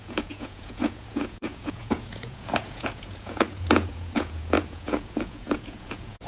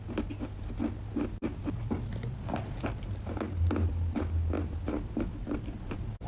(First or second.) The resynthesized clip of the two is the first